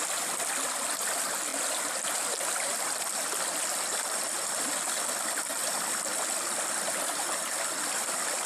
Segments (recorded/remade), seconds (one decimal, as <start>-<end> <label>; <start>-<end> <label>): 0.0-8.5 recorded